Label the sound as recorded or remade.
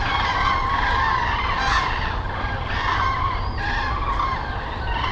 remade